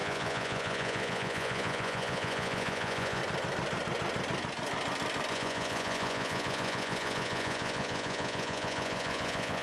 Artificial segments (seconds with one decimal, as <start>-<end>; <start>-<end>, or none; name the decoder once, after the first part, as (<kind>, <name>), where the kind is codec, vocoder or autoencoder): 0.0-3.2 (vocoder, Vocos); 5.3-9.6